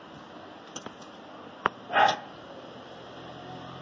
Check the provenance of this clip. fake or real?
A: real